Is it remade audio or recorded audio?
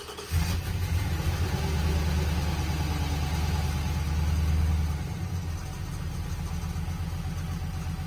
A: recorded